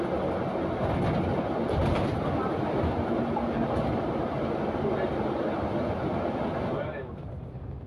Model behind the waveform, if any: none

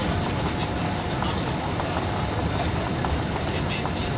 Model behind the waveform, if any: none